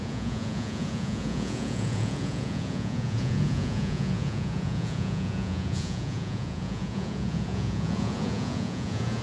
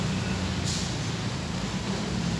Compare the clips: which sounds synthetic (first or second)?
first